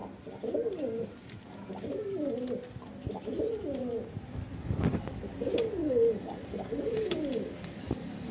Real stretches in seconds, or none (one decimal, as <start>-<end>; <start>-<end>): 0.0-4.5; 5.2-5.8